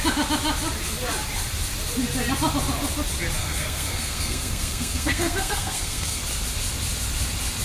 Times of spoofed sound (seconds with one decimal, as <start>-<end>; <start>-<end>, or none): 3.4-6.2